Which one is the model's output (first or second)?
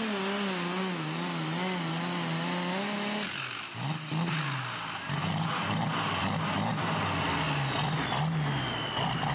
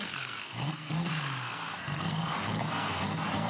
second